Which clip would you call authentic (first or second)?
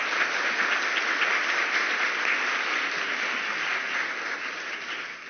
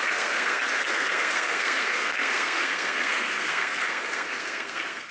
first